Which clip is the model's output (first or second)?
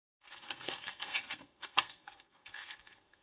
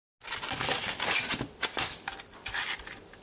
first